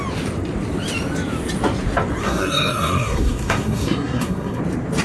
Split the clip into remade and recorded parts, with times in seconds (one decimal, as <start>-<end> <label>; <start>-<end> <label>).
0.0-2.2 recorded; 2.2-4.6 remade; 4.6-5.0 recorded